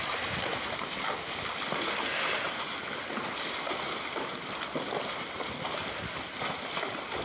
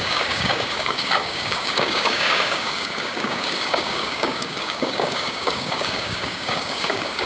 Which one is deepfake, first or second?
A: second